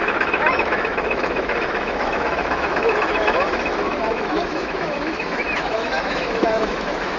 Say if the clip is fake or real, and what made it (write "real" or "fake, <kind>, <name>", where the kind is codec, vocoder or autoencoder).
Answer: fake, autoencoder, DAC-VAE